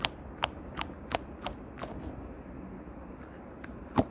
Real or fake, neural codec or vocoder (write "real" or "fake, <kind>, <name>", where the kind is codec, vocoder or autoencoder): real